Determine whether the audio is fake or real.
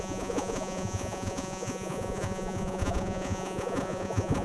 fake